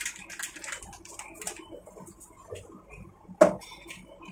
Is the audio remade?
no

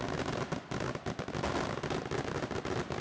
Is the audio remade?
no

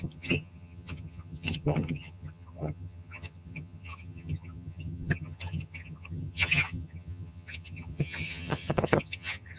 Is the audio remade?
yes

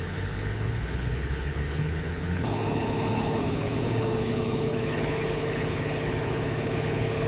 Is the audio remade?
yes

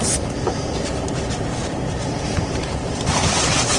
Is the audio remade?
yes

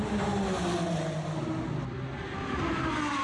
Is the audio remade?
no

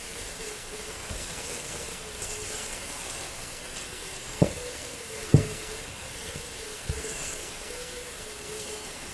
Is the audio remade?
yes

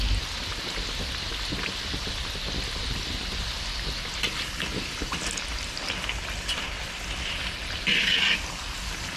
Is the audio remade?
no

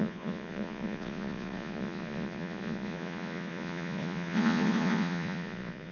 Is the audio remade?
yes